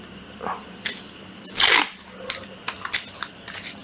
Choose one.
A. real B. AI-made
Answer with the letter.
A